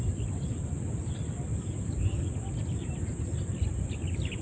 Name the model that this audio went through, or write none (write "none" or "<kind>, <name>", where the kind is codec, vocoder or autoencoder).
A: none